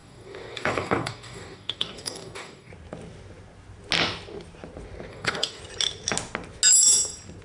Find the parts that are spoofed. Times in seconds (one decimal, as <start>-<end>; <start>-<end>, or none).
0.0-2.7; 5.1-5.6